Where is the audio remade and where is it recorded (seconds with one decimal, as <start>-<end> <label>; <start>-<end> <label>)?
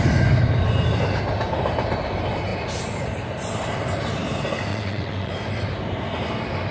0.0-4.7 recorded; 4.7-5.3 remade; 5.3-6.7 recorded